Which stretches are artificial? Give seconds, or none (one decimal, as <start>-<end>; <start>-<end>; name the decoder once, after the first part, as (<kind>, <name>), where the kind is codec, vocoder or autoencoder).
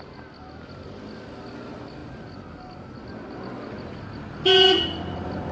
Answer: none